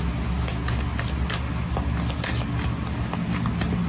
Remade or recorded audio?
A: recorded